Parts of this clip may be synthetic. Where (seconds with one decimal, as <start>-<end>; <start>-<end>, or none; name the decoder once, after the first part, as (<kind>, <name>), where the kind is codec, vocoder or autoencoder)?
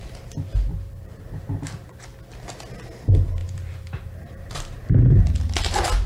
0.5-1.2 (vocoder, BigVGAN v2); 3.4-5.2